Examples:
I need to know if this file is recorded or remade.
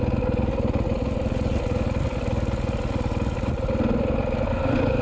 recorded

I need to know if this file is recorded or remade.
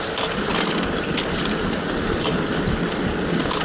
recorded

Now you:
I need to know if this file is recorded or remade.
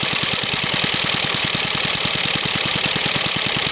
recorded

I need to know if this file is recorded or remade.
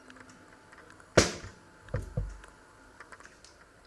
recorded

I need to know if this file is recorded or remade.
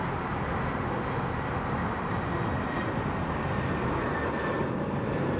recorded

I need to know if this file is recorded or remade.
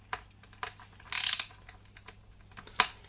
recorded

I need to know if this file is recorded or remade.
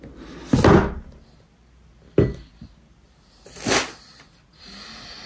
recorded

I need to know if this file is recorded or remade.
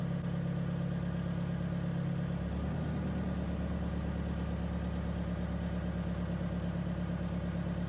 recorded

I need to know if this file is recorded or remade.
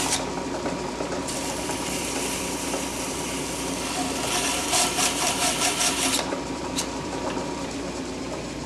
remade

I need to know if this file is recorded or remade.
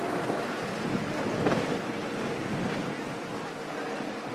recorded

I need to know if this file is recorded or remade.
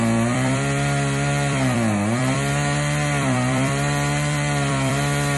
remade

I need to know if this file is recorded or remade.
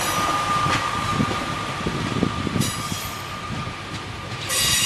recorded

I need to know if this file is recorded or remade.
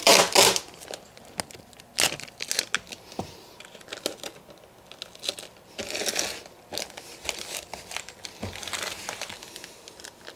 recorded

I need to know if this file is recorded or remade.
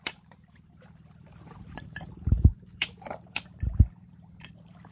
remade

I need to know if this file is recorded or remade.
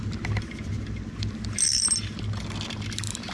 remade